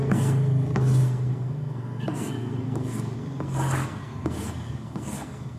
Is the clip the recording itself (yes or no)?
no